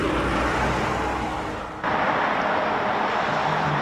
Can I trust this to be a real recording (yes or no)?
yes